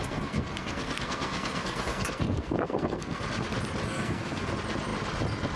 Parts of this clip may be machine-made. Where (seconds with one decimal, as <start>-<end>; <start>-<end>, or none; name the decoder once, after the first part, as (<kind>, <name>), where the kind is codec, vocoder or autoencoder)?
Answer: 0.0-3.2 (codec, SNAC); 3.8-4.5